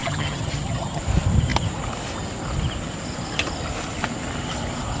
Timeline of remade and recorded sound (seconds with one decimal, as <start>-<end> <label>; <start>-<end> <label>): 0.0-1.0 remade; 1.0-5.0 recorded